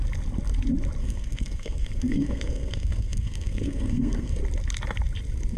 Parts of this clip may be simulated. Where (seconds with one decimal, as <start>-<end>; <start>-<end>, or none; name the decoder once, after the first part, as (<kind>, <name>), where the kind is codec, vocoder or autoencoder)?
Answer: 1.0-4.4 (codec, SNAC)